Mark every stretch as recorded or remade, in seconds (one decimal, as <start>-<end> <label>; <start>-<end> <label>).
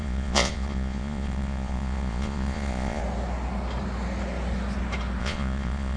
0.0-3.0 remade; 3.0-5.2 recorded; 5.2-6.0 remade